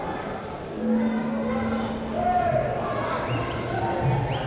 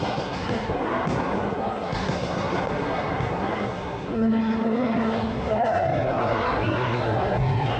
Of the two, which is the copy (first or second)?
second